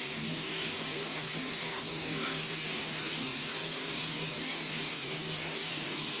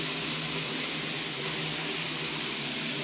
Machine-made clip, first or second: first